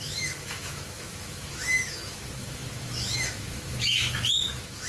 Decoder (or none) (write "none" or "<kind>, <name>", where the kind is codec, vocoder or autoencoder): autoencoder, DAC-VAE